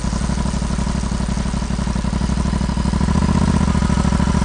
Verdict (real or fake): real